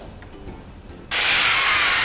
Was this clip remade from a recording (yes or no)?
no